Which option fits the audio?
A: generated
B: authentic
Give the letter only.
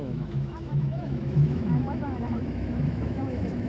A